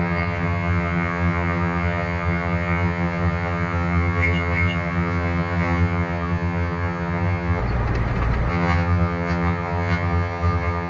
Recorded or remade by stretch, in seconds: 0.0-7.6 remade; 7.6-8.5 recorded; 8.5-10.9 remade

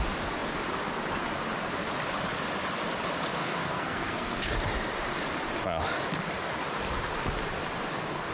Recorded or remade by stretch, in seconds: 0.0-3.4 recorded; 3.4-4.5 remade; 4.5-8.3 recorded

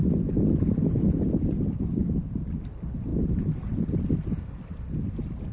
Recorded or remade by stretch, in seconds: 0.0-5.5 recorded